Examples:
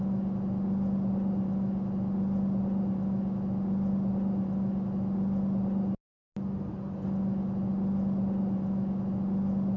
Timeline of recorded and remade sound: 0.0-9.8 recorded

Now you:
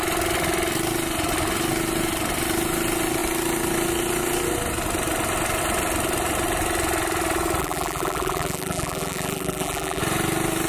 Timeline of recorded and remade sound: 0.0-7.6 recorded; 7.6-10.0 remade; 10.0-10.7 recorded

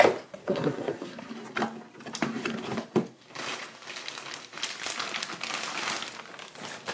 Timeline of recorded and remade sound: 0.0-0.4 recorded; 0.4-1.3 remade; 1.3-6.9 recorded

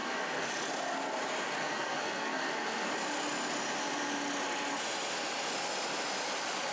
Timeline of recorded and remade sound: 0.0-0.5 remade; 0.5-1.6 recorded; 1.6-2.9 remade; 2.9-6.7 recorded

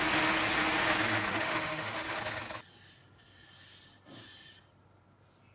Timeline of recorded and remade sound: 0.0-1.3 recorded; 1.3-2.2 remade; 2.2-5.5 recorded

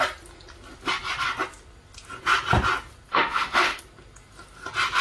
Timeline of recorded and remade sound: 0.0-3.1 recorded; 3.1-3.8 remade; 3.8-5.0 recorded